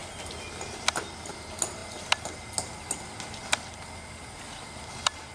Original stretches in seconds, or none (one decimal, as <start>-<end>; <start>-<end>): 0.0-5.3